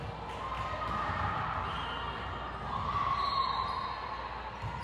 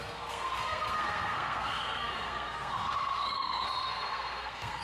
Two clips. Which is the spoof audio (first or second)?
second